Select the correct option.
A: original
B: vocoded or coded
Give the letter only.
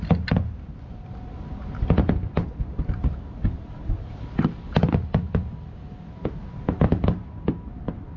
A